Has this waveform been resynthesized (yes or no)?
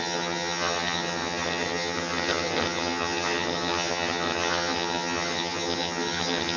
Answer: yes